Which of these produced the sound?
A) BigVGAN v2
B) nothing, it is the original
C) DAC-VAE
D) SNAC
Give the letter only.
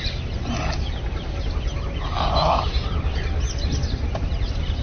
B